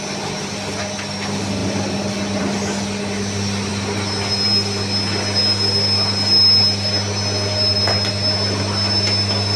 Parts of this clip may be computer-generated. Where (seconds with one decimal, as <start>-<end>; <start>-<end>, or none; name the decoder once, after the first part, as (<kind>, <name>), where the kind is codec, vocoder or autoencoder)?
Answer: none